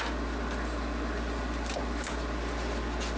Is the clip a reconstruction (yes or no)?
no